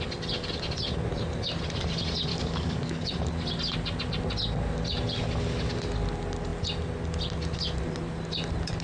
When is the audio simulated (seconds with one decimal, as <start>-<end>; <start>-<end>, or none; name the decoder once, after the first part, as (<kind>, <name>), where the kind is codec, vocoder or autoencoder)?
2.3-3.1 (codec, DAC)